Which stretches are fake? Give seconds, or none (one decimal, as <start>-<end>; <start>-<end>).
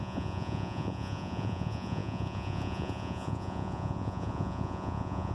0.0-5.3